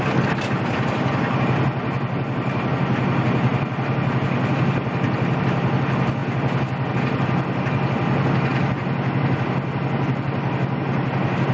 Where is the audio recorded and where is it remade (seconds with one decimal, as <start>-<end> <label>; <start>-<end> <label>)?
0.0-11.5 recorded